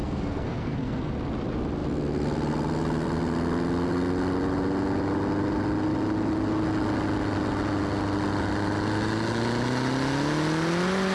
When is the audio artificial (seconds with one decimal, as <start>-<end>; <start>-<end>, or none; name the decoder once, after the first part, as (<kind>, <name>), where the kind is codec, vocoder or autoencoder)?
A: 0.0-1.1 (codec, SNAC)